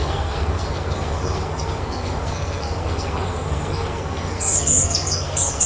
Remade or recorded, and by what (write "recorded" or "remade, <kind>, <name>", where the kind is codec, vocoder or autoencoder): remade, codec, SNAC